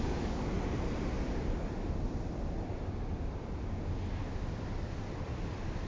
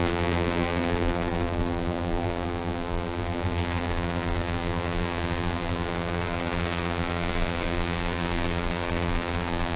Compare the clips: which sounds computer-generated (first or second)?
second